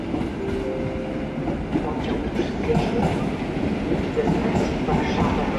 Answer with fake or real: real